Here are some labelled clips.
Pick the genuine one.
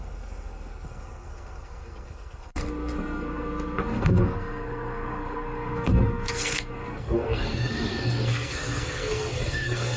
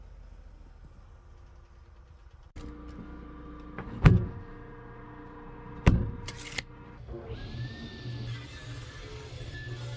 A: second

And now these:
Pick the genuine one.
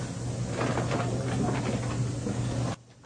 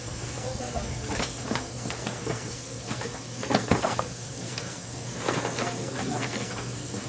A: first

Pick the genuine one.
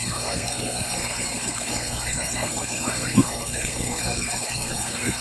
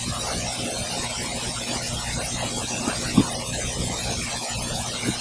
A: second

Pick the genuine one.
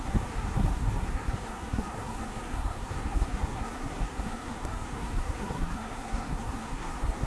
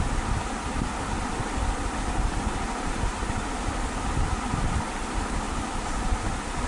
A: second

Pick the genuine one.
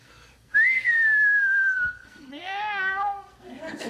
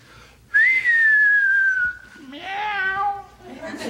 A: second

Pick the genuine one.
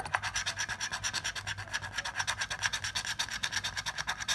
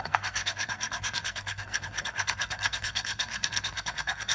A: first